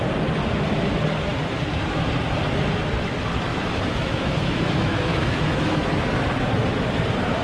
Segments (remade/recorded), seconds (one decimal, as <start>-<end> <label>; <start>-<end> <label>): 0.0-3.5 recorded; 3.5-6.0 remade; 6.0-7.4 recorded